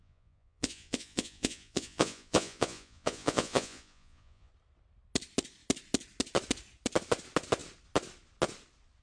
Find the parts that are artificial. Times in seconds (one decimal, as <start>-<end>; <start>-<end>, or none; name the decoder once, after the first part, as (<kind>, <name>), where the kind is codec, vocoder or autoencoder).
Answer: 0.0-4.5 (vocoder, Vocos)